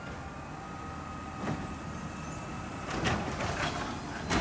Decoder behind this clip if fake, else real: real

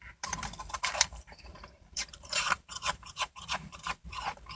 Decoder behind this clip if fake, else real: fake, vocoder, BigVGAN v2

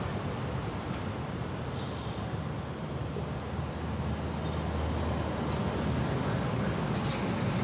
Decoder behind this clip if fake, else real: real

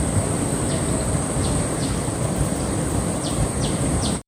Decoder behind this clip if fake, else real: fake, vocoder, BigVGAN v2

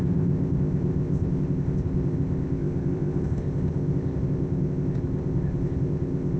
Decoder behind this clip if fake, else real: fake, codec, ZipCodec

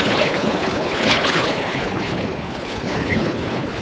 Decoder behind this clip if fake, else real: fake, codec, HILCodec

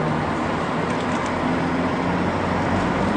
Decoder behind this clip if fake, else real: real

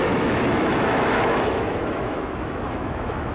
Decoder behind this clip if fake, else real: fake, autoencoder, DAC-VAE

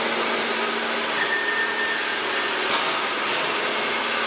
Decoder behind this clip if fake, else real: real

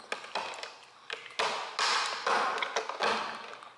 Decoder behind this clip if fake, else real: real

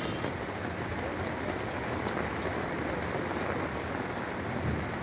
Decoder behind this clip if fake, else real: real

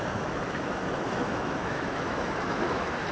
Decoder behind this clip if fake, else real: fake, autoencoder, DAC-VAE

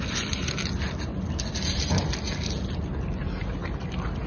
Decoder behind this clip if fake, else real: real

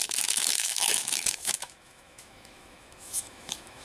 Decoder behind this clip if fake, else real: fake, autoencoder, DAC-VAE